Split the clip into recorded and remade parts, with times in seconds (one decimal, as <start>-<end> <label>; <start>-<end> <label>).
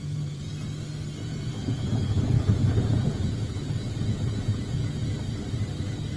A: 0.0-0.5 remade; 0.5-1.2 recorded; 1.2-4.9 remade; 4.9-6.2 recorded